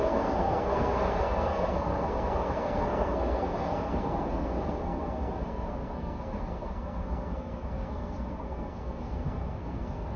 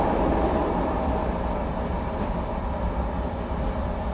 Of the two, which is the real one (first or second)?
second